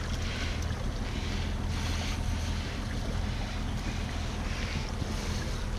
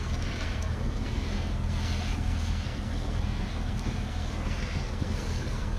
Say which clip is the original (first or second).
first